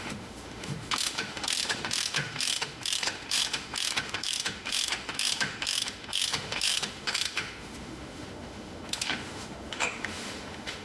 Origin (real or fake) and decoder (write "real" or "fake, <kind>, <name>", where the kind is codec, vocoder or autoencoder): fake, autoencoder, DAC-VAE